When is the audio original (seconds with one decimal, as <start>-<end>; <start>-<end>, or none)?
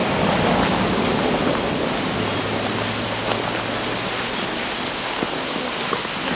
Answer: 2.4-6.3